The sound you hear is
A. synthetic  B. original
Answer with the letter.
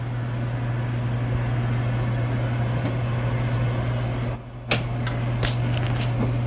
B